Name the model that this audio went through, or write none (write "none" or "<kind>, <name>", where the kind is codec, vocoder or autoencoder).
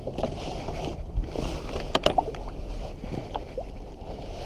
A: vocoder, BigVGAN v2